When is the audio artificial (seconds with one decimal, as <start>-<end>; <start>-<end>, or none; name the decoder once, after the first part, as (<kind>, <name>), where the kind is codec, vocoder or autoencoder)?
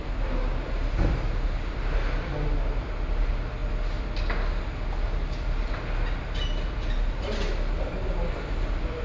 none